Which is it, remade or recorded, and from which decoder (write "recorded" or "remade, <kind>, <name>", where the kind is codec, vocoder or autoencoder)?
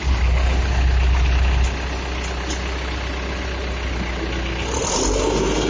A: recorded